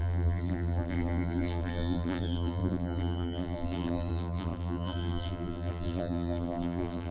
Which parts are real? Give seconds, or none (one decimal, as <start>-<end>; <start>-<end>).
none